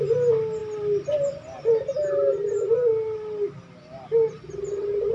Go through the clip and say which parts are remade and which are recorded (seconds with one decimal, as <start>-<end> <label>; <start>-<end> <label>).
0.0-5.1 recorded